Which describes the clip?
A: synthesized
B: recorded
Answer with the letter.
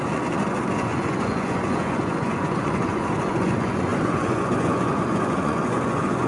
A